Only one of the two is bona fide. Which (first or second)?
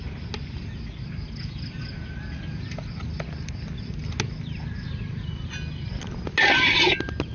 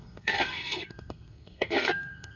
first